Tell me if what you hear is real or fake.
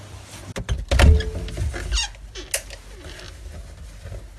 real